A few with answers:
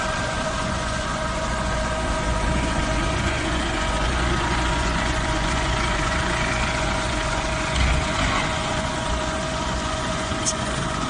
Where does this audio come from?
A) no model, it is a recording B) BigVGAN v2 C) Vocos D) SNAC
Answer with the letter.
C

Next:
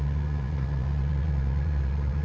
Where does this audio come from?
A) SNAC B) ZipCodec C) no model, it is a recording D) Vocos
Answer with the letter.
D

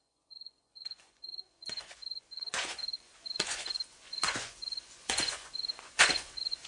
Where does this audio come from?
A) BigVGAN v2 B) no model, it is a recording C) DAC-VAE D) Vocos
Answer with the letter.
D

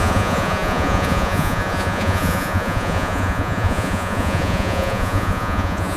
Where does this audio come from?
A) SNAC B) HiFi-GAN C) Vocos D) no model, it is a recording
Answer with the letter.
C